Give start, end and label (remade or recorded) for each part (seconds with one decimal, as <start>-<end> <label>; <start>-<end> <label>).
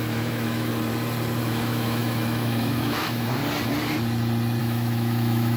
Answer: 0.0-0.7 remade; 0.7-1.4 recorded; 1.4-3.4 remade; 3.4-4.6 recorded; 4.6-5.6 remade